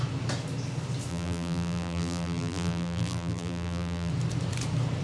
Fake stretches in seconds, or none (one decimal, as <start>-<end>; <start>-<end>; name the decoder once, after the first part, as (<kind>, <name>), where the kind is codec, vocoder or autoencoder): 1.1-4.1 (vocoder, BigVGAN v2)